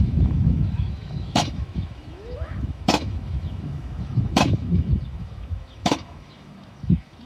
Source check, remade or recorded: remade